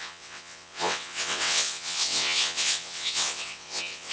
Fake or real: fake